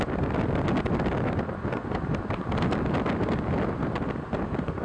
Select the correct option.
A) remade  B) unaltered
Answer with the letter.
B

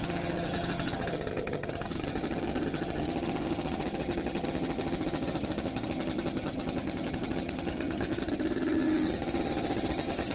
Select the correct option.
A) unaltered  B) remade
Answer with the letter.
B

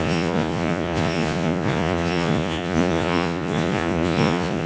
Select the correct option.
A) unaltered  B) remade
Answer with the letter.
B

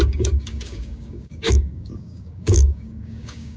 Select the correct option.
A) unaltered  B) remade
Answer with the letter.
B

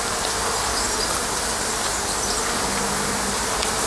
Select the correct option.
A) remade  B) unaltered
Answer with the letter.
B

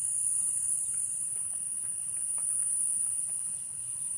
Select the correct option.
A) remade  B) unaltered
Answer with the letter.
B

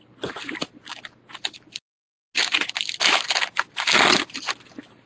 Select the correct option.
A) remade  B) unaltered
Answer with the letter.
B